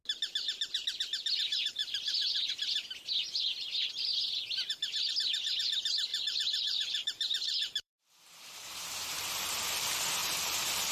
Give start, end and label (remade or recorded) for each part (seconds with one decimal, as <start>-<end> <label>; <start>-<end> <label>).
0.0-6.1 recorded; 6.1-9.2 remade; 9.2-10.2 recorded; 10.2-10.9 remade